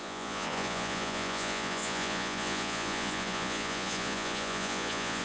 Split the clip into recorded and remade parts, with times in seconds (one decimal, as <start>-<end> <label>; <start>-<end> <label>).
0.0-5.2 remade